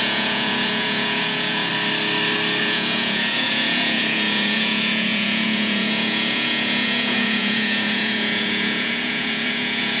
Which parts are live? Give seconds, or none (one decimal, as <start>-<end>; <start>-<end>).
1.7-2.6

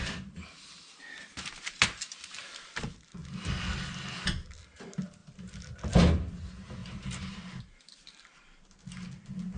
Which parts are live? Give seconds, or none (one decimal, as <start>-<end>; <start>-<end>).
0.0-9.6